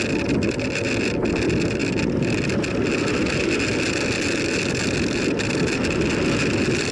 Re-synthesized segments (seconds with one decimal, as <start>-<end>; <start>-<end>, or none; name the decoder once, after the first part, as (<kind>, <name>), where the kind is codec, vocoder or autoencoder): none